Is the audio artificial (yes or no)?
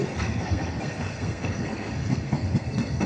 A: yes